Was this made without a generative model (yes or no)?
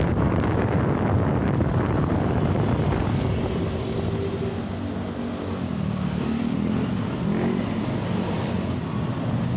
yes